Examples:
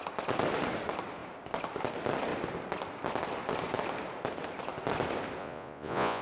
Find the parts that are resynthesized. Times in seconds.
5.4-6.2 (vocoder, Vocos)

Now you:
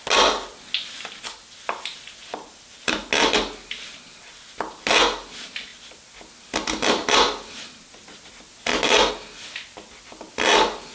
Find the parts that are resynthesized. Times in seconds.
2.2-3.0 (vocoder, BigVGAN v2)